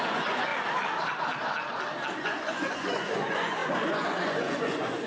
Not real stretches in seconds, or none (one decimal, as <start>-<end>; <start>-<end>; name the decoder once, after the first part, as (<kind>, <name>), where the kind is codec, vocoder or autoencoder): 0.0-0.5 (vocoder, Vocos); 2.2-5.1